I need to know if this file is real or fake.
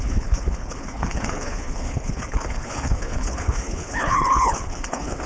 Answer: fake